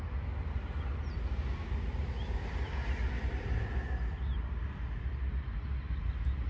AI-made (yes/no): no